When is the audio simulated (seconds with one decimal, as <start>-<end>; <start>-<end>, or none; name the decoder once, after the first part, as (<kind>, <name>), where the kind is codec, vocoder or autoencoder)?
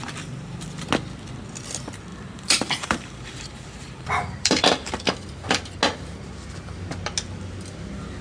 2.1-4.9 (vocoder, BigVGAN v2)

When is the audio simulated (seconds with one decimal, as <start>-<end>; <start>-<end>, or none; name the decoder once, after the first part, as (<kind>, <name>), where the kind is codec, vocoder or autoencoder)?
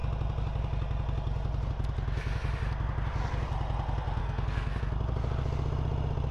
4.2-4.8 (codec, SNAC)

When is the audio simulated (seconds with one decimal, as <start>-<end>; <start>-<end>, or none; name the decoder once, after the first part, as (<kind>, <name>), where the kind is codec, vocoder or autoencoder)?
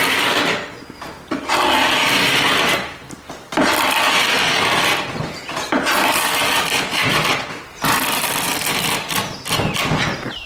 2.3-3.5 (vocoder, BigVGAN v2); 4.2-9.2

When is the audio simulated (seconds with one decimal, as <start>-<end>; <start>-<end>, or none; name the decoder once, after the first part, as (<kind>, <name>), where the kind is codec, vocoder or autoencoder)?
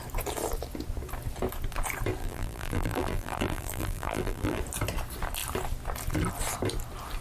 2.2-4.6 (vocoder, BigVGAN v2)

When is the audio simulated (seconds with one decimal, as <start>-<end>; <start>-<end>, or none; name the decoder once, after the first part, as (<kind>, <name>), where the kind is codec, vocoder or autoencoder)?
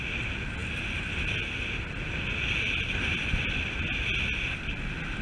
none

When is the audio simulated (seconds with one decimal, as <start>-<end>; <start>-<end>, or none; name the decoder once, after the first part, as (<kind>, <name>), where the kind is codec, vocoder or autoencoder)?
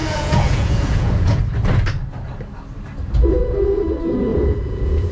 0.0-1.4 (vocoder, Vocos); 4.3-5.1